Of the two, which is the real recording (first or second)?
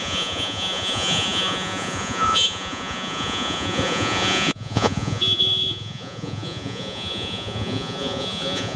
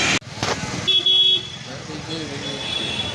second